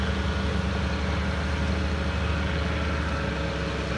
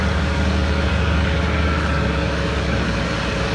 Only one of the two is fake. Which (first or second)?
second